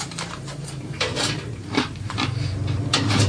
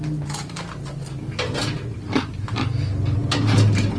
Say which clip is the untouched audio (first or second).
second